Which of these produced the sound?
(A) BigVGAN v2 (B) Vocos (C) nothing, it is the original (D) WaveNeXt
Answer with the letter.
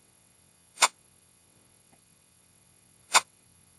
D